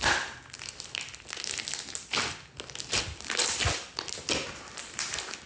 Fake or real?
real